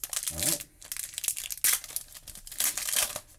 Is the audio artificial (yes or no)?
no